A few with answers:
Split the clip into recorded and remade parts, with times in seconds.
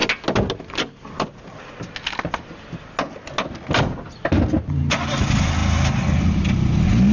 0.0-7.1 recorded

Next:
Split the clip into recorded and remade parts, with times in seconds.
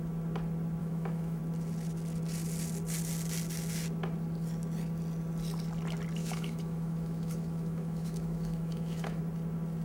0.0-0.8 recorded; 0.8-1.4 remade; 1.4-6.2 recorded; 6.2-9.2 remade; 9.2-9.8 recorded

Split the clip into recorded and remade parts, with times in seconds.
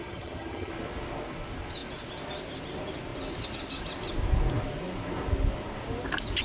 0.0-0.7 remade; 0.7-6.4 recorded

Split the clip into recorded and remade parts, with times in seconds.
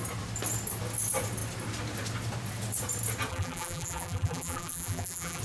0.0-3.3 recorded; 3.3-5.4 remade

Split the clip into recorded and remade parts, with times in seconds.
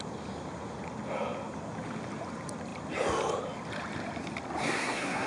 0.0-4.6 recorded; 4.6-5.3 remade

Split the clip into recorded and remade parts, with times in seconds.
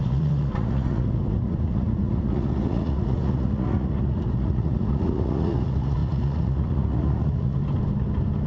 0.0-7.6 remade; 7.6-8.5 recorded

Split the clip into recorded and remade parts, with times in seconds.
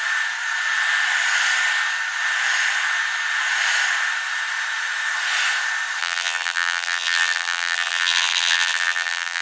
0.0-6.0 recorded; 6.0-9.4 remade